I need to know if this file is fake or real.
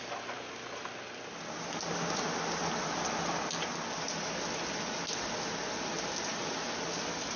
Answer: real